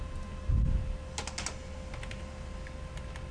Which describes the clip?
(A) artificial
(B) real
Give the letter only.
B